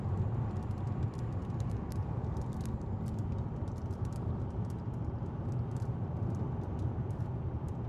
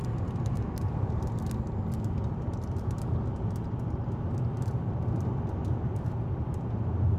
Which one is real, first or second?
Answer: second